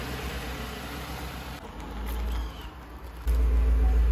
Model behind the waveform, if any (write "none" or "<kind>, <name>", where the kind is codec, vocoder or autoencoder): none